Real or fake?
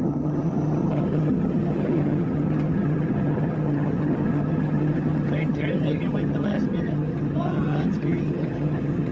fake